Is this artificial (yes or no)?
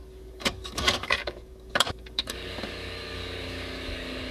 yes